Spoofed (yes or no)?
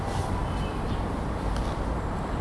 no